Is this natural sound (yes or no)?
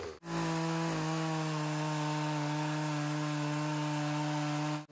yes